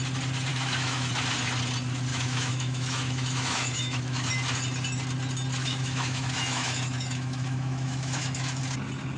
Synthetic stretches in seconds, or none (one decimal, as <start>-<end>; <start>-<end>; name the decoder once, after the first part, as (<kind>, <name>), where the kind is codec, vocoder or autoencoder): 0.5-1.1 (autoencoder, DAC-VAE); 2.1-4.3; 5.6-8.6